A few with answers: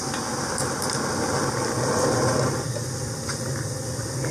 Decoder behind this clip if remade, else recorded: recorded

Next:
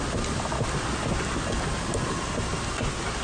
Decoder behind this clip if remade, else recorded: recorded